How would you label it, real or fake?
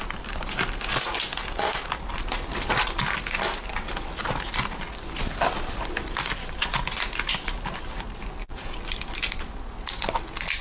real